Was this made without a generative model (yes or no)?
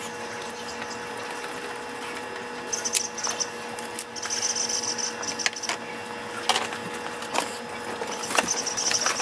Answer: yes